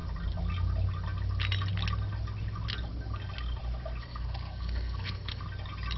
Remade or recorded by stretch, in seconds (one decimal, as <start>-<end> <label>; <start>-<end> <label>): 0.0-4.0 recorded; 4.0-5.4 remade; 5.4-6.0 recorded